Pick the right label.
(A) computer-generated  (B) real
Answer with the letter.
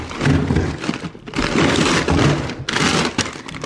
B